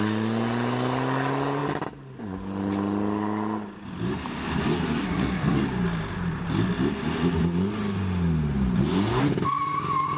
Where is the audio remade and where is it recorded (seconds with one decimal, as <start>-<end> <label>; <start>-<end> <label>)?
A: 0.0-5.0 recorded; 5.0-5.6 remade; 5.6-10.2 recorded